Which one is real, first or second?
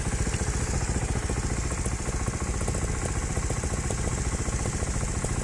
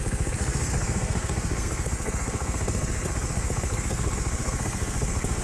first